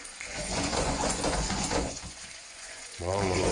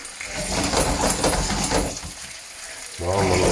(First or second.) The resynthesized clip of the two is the first